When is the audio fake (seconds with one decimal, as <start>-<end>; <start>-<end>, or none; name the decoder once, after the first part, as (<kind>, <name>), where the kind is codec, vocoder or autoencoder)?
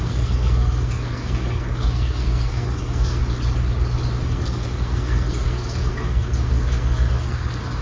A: 0.0-3.2 (codec, SNAC); 4.2-7.8